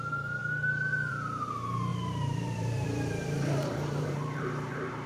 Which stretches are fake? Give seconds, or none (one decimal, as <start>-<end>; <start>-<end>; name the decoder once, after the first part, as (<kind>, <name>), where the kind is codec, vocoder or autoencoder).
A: 0.0-0.4 (vocoder, BigVGAN v2); 1.1-5.1